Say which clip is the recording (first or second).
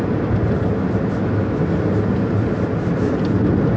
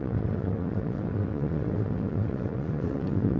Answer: first